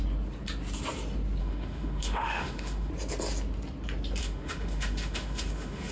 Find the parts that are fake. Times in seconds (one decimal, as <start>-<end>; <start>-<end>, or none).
1.4-2.9; 4.2-5.9